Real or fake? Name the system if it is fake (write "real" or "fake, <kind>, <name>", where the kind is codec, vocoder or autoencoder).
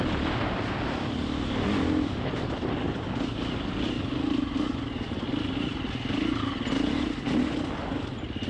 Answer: real